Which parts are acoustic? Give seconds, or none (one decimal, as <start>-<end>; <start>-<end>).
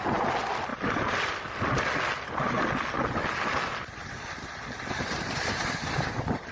0.0-6.5